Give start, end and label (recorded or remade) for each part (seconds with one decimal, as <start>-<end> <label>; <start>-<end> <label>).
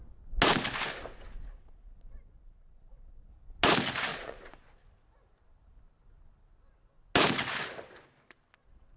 0.0-1.1 recorded; 1.1-3.3 remade; 3.3-4.1 recorded; 4.1-4.6 remade; 4.6-9.0 recorded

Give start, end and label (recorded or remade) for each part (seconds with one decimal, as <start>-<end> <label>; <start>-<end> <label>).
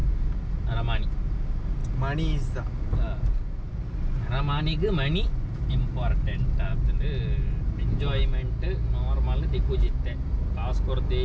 0.0-11.2 recorded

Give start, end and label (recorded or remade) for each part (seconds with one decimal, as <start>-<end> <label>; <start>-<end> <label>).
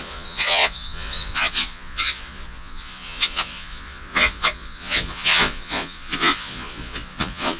0.0-7.6 remade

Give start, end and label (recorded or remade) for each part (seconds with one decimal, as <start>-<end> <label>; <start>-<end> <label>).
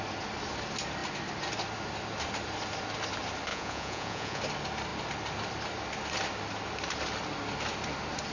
0.0-3.5 recorded; 3.5-4.4 remade; 4.4-8.3 recorded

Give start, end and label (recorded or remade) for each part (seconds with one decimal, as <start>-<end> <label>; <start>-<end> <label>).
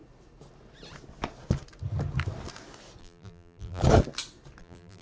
0.0-3.0 recorded; 3.0-3.8 remade; 3.8-4.6 recorded; 4.6-5.0 remade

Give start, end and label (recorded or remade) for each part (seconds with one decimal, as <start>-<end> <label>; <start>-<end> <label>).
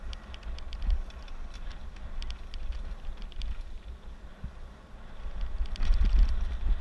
0.0-6.8 recorded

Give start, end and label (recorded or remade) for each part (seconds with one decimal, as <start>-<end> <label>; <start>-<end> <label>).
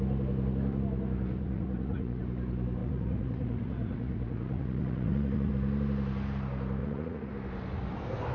0.0-1.4 recorded; 1.4-2.2 remade; 2.2-2.8 recorded; 2.8-5.5 remade; 5.5-6.8 recorded; 6.8-7.3 remade; 7.3-8.3 recorded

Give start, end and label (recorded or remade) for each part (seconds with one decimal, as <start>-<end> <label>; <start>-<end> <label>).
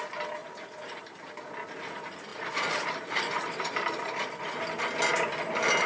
0.0-0.4 recorded; 0.4-1.3 remade; 1.3-2.3 recorded; 2.3-4.4 remade; 4.4-5.9 recorded